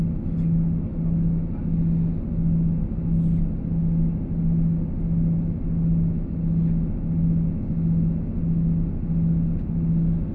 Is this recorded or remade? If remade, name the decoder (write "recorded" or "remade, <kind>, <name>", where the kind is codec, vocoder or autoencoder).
recorded